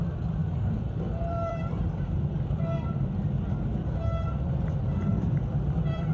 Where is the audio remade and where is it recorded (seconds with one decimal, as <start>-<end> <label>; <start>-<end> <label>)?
0.0-0.4 recorded; 0.4-2.9 remade; 2.9-5.1 recorded; 5.1-6.1 remade